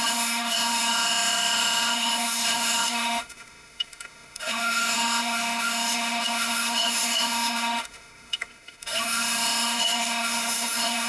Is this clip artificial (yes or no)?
yes